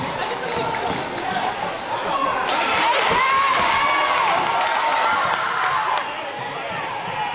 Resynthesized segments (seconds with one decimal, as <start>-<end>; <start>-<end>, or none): none